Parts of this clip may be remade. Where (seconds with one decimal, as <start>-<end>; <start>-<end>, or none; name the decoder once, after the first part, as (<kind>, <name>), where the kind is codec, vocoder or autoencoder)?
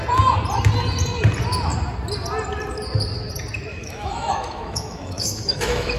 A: 3.7-6.0 (autoencoder, DAC-VAE)